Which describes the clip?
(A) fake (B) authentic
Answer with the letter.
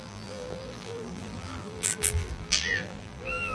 A